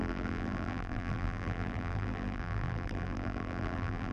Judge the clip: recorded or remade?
remade